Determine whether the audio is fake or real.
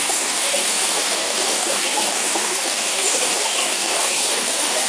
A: fake